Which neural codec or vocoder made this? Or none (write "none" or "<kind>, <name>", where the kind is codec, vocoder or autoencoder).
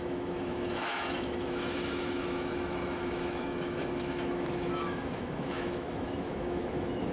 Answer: autoencoder, DAC-VAE